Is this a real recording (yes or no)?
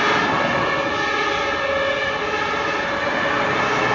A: yes